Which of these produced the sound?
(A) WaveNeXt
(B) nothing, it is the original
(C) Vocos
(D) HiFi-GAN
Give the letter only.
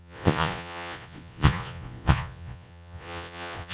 C